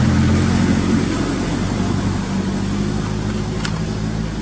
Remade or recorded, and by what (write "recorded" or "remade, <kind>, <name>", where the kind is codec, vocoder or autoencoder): recorded